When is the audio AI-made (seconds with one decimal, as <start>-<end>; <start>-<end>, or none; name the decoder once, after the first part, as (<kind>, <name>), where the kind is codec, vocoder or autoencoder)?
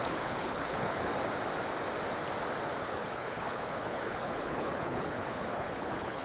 0.0-1.1 (codec, HILCodec); 2.8-6.2